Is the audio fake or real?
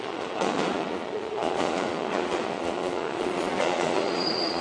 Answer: fake